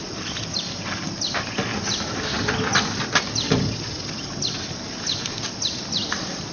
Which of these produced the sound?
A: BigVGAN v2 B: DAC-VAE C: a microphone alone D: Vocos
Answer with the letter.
A